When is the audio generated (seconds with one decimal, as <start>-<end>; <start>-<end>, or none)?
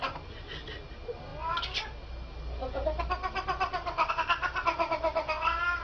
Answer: none